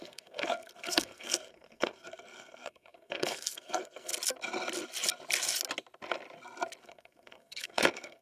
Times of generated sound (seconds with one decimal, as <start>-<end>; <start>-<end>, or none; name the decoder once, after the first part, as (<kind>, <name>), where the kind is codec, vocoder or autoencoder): 0.0-4.1 (codec, SNAC); 6.8-8.2